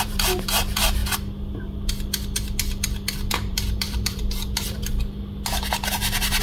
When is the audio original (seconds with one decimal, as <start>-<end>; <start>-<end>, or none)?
1.0-3.3; 4.9-6.4